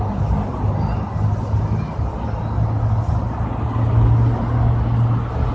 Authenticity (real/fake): real